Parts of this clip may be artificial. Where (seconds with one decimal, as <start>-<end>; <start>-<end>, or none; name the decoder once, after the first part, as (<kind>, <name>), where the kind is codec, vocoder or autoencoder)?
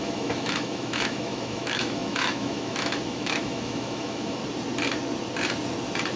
0.0-4.4 (autoencoder, DAC-VAE)